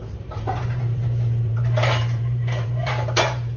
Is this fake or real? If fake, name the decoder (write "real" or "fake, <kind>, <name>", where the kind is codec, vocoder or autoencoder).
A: fake, vocoder, BigVGAN v2